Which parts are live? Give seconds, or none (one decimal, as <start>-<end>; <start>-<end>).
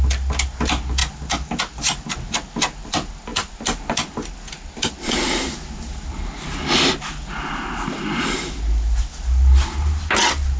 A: 0.0-10.6